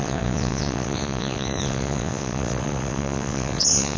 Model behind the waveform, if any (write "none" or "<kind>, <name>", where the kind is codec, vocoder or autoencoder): vocoder, WaveNeXt